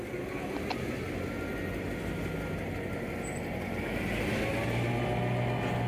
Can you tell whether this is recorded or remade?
recorded